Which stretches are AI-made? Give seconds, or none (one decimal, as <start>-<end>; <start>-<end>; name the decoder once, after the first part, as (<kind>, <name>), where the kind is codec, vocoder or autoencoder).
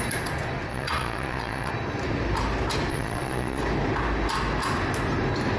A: 0.7-1.7 (vocoder, Vocos); 2.9-3.6